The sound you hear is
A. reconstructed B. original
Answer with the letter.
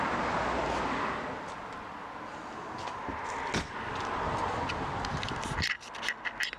B